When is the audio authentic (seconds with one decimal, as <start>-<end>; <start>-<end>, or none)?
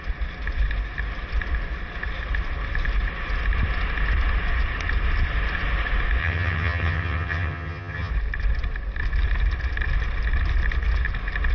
0.0-6.2; 8.1-11.5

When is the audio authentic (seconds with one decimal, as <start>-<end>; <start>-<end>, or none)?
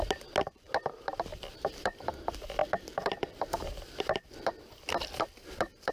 0.0-1.3; 2.1-2.6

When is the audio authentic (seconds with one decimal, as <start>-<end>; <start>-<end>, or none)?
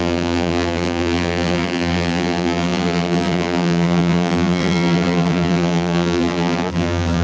none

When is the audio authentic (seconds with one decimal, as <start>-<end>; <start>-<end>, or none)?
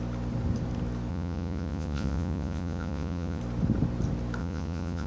0.0-1.1; 3.4-4.4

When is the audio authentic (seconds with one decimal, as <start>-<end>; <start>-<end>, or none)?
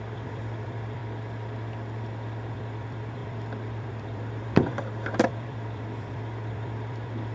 1.0-2.5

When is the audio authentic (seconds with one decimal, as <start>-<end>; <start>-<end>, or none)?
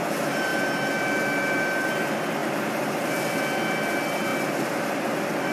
0.0-2.4; 3.1-5.5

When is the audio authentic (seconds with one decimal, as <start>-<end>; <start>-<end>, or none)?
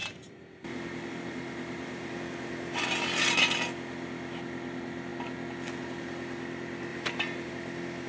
2.2-6.9; 7.5-8.1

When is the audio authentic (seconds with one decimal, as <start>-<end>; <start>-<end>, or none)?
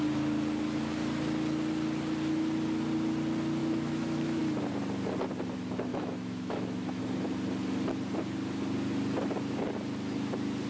0.0-3.6; 4.4-5.9; 7.0-10.7